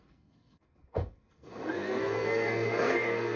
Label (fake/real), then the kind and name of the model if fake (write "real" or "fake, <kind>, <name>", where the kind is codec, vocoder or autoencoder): fake, codec, SNAC